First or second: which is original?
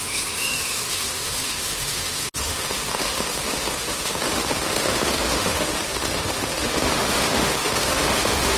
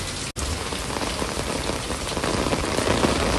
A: second